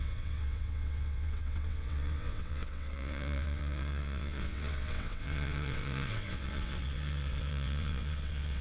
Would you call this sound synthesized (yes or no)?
yes